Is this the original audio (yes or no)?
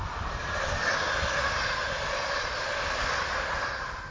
yes